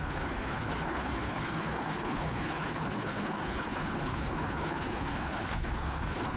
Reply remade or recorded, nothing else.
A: remade